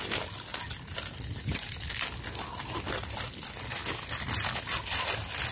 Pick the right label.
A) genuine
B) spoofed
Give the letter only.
A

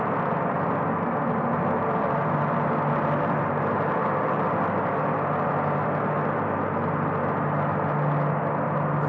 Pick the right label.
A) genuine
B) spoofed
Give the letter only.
A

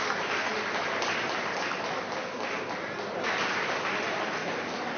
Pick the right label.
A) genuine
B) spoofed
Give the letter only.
A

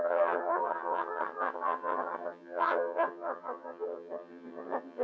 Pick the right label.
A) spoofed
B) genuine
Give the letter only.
A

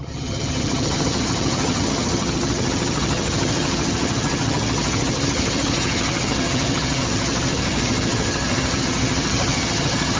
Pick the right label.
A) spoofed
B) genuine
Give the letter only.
A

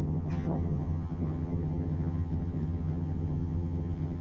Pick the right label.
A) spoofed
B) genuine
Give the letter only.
A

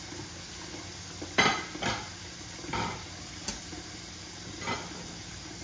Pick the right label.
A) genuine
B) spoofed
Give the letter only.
A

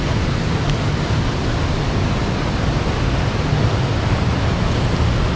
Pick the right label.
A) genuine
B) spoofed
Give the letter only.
A